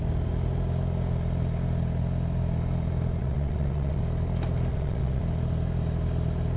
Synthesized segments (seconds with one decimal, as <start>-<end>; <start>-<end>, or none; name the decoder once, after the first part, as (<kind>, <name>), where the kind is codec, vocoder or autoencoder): 3.2-4.0 (vocoder, WaveNeXt); 4.7-5.2

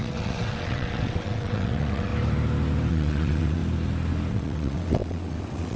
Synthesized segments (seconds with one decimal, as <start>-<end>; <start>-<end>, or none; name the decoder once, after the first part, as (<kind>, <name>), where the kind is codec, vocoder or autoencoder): 0.0-2.1 (vocoder, WaveNeXt); 2.9-3.6; 4.3-5.8

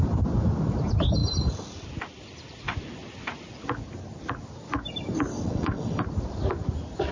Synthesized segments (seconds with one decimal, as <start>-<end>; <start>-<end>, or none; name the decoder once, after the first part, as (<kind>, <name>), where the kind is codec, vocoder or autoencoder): 5.3-6.0 (vocoder, WaveNeXt)

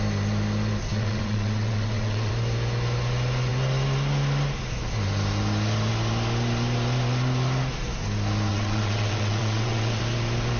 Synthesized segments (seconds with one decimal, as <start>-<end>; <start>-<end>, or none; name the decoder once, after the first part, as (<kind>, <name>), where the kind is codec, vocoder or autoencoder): 0.9-2.3 (vocoder, WaveNeXt); 8.5-10.0

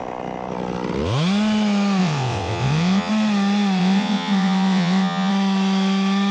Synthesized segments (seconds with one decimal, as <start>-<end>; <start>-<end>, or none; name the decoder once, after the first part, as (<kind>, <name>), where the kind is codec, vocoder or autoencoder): 2.0-3.1 (vocoder, WaveNeXt); 3.8-5.3

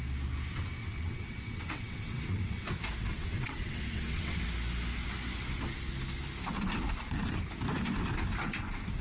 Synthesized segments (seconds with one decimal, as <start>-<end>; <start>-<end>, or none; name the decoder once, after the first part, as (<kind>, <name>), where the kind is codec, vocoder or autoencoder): 0.8-2.6 (vocoder, WaveNeXt); 3.1-4.4

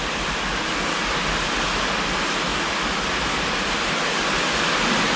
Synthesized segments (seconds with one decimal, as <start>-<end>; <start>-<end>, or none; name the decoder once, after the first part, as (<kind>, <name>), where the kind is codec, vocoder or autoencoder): none